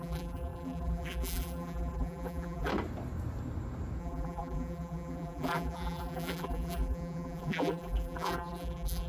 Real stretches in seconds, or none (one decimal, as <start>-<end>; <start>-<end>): 2.7-4.0